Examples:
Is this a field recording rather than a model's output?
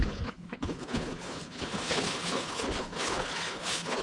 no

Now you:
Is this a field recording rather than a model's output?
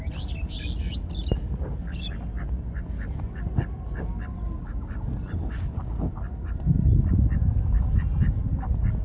yes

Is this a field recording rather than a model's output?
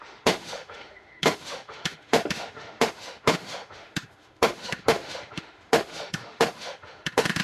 no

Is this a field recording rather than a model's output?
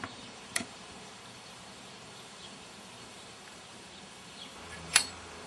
no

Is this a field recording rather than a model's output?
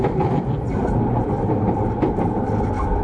yes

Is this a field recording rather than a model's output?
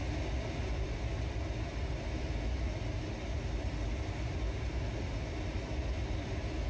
yes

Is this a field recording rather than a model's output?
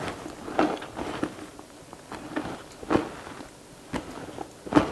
yes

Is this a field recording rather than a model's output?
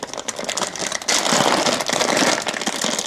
yes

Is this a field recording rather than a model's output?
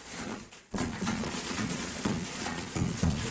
no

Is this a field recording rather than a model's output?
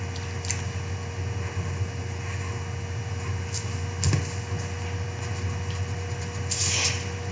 yes